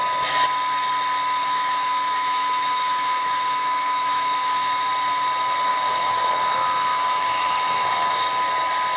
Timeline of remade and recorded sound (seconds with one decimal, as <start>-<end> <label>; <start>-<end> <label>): 0.0-1.4 recorded; 1.4-4.9 remade; 4.9-5.7 recorded; 5.7-6.3 remade; 6.3-6.9 recorded; 6.9-8.2 remade; 8.2-9.0 recorded

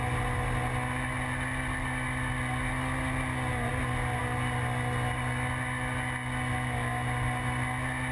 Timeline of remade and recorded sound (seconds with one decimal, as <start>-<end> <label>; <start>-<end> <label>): 0.0-8.1 recorded

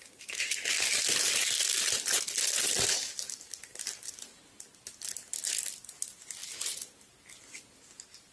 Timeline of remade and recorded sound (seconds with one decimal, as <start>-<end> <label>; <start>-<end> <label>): 0.0-8.3 recorded

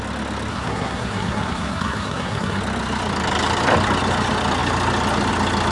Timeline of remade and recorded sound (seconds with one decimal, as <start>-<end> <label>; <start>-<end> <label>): 0.0-0.5 recorded; 0.5-2.6 remade; 2.6-5.7 recorded

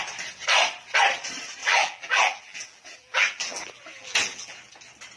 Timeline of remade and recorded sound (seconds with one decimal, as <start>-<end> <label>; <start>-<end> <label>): 0.0-1.6 recorded; 1.6-4.7 remade; 4.7-5.2 recorded

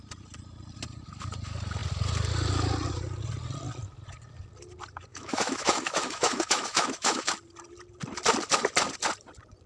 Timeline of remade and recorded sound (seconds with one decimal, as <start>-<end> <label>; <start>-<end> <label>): 0.0-5.1 recorded; 5.1-7.3 remade; 7.3-9.7 recorded

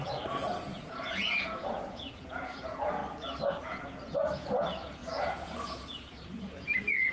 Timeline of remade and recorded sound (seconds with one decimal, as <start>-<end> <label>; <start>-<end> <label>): 0.0-3.0 remade; 3.0-3.6 recorded; 3.6-7.1 remade